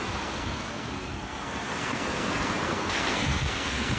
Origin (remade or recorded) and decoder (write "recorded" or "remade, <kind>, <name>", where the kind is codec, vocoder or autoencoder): remade, codec, SNAC